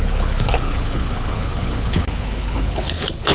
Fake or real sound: fake